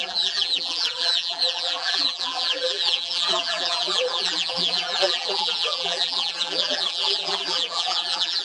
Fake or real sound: fake